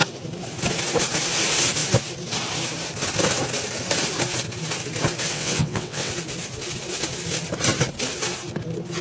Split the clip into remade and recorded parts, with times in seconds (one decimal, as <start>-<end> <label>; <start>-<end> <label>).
0.0-5.3 recorded; 5.3-6.1 remade; 6.1-9.0 recorded